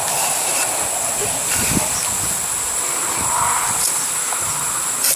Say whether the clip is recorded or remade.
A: recorded